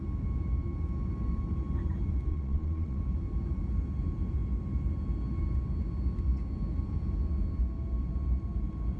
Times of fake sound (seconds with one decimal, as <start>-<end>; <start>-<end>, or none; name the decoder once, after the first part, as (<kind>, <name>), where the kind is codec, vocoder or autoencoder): 2.3-3.0 (vocoder, Vocos)